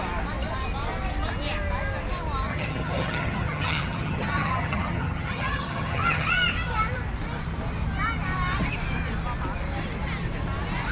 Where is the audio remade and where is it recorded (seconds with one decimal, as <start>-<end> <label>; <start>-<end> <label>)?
0.0-2.5 recorded; 2.5-6.3 remade; 6.3-10.9 recorded